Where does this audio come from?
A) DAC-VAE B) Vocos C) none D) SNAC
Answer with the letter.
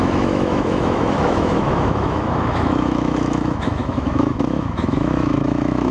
A